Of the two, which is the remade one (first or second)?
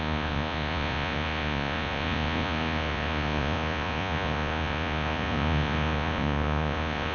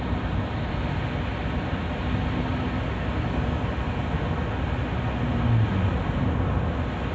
first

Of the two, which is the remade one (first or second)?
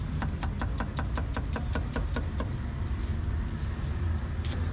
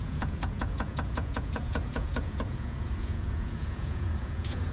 second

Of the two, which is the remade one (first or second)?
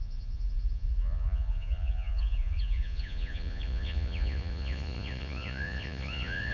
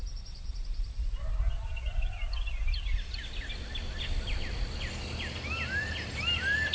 first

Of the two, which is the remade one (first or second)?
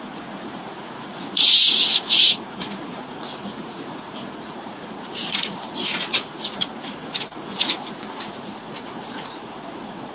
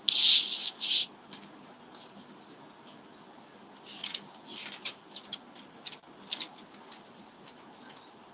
first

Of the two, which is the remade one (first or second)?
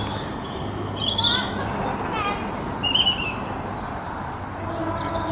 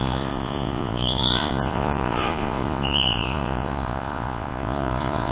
second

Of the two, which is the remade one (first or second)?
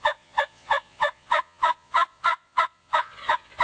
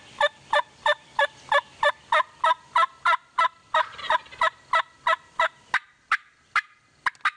first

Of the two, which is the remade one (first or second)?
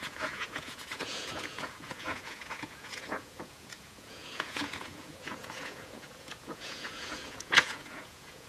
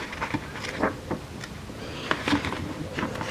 first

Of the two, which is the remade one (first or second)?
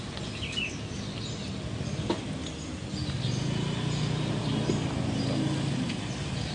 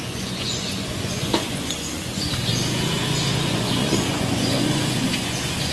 second